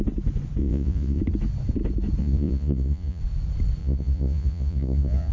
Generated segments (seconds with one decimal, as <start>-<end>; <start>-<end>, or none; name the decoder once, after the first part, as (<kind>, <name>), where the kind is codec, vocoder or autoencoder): 0.6-1.2 (vocoder, Vocos); 2.2-3.2; 3.8-5.3